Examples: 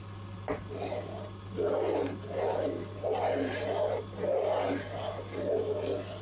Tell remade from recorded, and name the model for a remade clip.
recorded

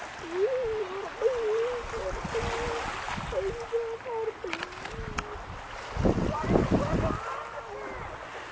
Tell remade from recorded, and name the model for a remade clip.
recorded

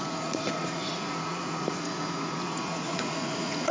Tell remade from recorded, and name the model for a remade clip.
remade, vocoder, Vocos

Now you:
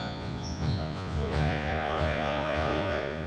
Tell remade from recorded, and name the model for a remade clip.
remade, vocoder, Vocos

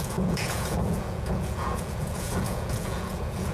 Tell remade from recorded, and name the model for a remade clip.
remade, vocoder, Vocos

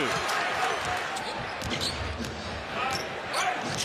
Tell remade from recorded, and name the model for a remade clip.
recorded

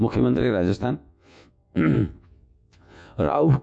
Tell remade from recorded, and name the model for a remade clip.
remade, vocoder, Vocos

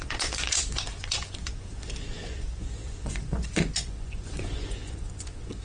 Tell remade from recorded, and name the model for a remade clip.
remade, vocoder, Vocos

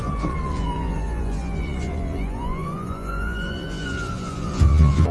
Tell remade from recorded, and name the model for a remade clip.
remade, vocoder, Vocos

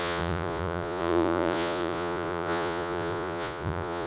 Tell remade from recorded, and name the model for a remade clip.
remade, vocoder, Vocos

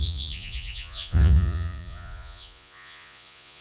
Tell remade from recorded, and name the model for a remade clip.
remade, vocoder, Vocos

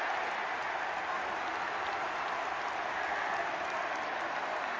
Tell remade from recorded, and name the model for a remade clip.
recorded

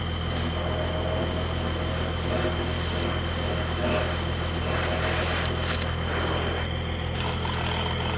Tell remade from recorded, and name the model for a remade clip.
recorded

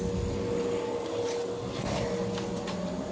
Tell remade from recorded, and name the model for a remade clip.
recorded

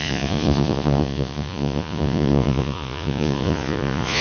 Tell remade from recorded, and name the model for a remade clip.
remade, vocoder, Vocos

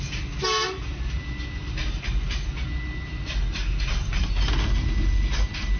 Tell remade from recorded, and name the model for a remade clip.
recorded